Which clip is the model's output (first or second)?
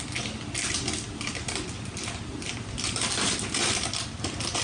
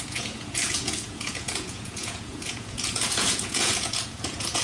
second